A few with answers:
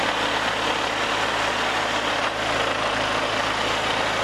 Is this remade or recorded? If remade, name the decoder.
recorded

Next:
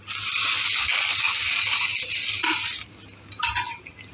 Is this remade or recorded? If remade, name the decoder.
recorded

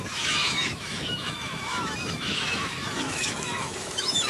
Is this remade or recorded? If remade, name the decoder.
remade, autoencoder, DAC-VAE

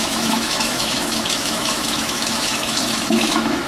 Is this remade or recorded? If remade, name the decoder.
remade, autoencoder, DAC-VAE